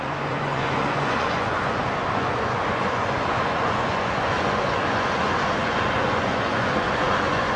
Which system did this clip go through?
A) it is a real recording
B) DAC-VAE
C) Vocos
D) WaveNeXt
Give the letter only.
C